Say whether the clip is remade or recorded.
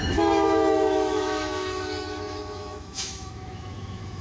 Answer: remade